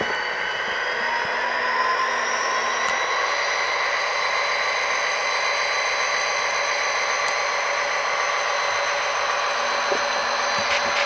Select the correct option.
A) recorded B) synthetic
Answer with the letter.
A